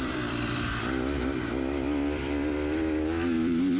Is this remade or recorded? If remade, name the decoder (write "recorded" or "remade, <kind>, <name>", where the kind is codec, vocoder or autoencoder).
remade, vocoder, BigVGAN v2